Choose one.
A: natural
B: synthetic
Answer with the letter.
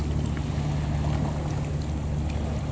A